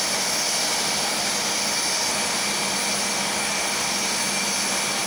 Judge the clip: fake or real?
real